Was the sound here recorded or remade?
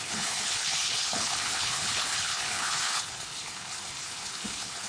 remade